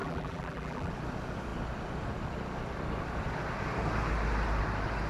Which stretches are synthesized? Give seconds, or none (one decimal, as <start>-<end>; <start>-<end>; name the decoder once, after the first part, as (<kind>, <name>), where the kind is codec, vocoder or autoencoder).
0.0-0.9 (vocoder, BigVGAN v2)